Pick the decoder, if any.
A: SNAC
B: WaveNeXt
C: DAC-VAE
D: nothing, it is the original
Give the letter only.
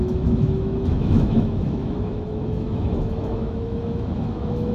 C